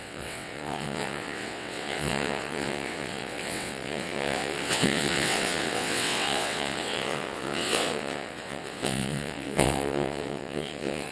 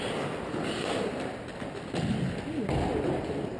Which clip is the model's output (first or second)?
first